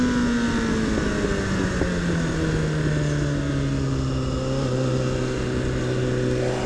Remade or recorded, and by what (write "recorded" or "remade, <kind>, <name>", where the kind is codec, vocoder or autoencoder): recorded